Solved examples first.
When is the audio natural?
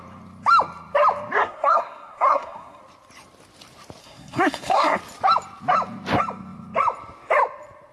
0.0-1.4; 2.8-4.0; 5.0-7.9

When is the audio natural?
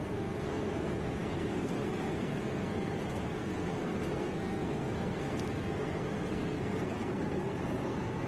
none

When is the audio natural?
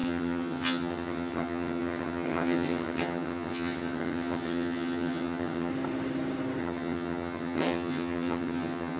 5.7-6.6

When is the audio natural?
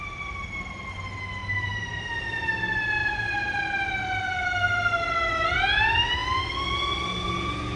0.0-1.4; 2.1-3.0; 3.9-7.8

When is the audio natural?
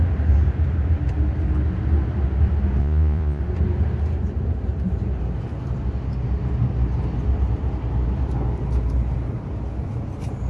0.0-2.8; 3.4-10.5